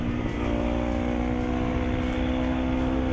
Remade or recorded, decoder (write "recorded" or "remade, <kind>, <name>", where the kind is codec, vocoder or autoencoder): recorded